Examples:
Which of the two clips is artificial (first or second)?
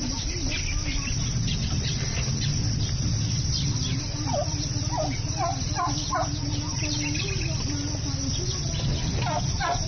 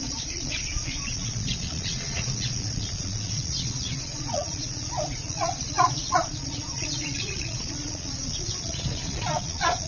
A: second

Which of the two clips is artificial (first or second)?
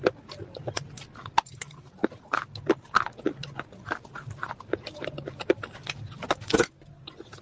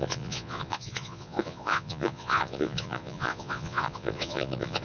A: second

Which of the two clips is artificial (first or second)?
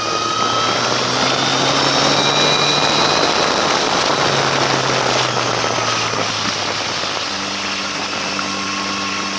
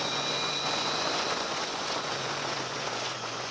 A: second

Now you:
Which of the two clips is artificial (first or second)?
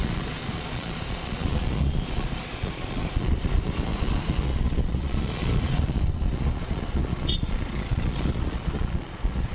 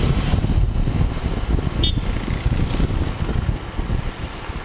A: first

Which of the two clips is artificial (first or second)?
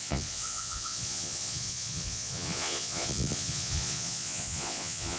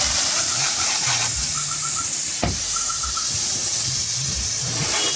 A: first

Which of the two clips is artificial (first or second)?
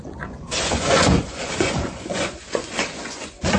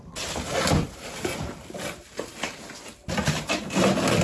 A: first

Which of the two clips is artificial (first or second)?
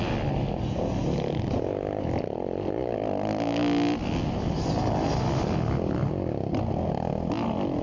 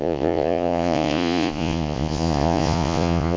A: second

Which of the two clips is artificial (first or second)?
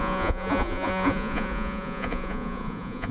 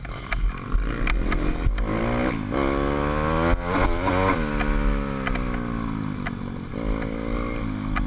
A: first